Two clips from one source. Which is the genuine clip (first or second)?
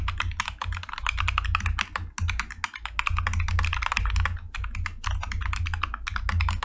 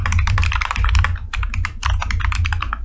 first